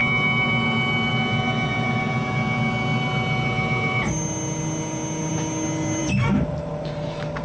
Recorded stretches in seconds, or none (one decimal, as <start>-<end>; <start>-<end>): 0.0-6.0; 6.9-7.4